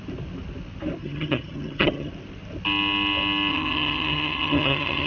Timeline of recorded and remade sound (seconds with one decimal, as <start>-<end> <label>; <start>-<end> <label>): 0.0-1.0 recorded; 1.0-2.1 remade; 2.1-3.5 recorded; 3.5-5.1 remade